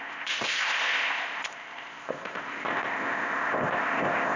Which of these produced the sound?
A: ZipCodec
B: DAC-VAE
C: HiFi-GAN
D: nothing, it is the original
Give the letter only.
A